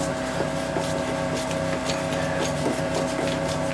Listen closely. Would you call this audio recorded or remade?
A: recorded